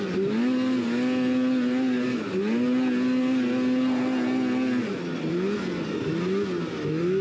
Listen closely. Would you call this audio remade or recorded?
recorded